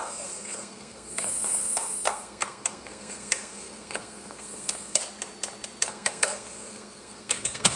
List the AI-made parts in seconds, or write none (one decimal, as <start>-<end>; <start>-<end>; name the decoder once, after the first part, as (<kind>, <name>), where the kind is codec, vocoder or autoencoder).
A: 0.0-5.0 (codec, SNAC); 5.8-7.8